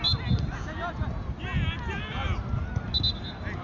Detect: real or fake real